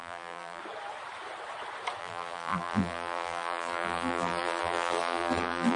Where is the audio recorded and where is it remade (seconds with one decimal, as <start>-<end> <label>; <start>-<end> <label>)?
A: 0.0-0.6 remade; 0.6-2.0 recorded; 2.0-5.8 remade